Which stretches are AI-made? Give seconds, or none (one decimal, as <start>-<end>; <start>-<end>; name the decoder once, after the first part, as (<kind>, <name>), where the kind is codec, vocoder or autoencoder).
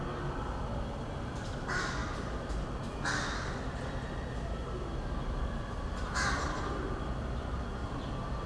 none